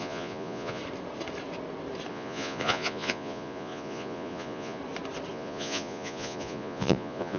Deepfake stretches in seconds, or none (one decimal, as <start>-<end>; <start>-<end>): 0.0-0.8; 2.1-4.8; 5.3-7.4